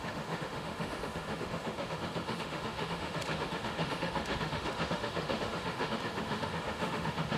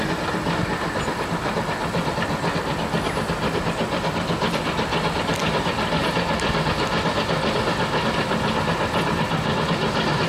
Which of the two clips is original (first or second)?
second